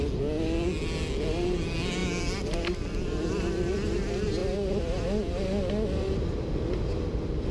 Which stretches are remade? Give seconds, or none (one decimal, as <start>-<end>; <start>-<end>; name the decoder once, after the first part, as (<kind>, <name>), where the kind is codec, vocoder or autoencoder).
none